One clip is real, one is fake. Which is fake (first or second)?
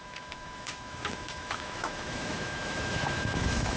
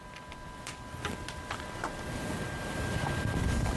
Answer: first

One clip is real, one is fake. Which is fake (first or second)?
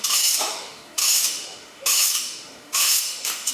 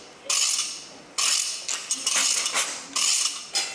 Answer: first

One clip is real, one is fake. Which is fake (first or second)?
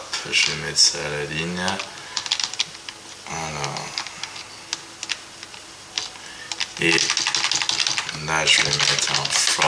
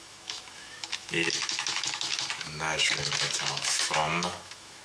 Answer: second